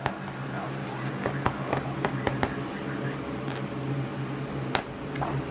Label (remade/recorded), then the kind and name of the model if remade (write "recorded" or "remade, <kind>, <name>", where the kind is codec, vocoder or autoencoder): recorded